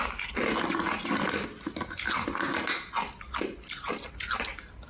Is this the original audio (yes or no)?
yes